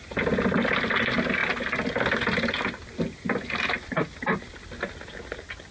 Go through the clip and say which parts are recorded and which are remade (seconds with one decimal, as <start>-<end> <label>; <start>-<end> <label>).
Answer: 0.0-5.7 recorded